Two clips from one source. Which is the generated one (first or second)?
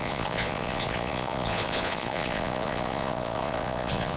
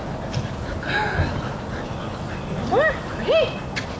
first